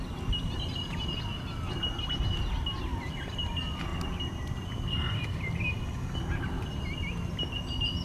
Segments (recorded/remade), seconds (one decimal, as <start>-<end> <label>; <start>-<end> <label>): 0.0-3.9 recorded; 3.9-6.8 remade; 6.8-8.0 recorded